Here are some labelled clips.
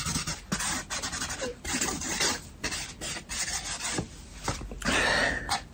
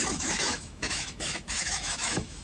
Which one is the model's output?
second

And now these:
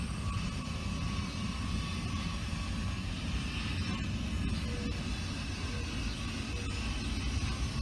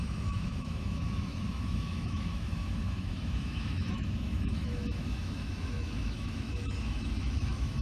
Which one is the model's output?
second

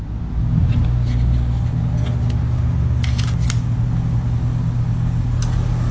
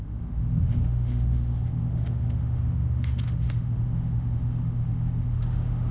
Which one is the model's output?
second